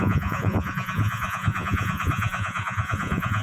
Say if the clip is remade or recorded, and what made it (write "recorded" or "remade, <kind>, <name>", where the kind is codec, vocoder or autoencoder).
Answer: remade, vocoder, Vocos